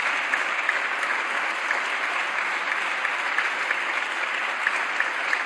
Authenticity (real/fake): real